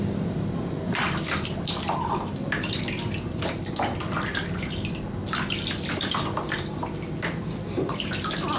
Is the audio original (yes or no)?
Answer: yes